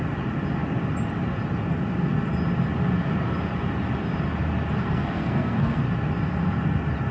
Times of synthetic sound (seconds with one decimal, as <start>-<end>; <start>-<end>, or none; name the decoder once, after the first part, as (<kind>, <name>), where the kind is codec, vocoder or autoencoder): 4.8-5.8 (codec, SNAC)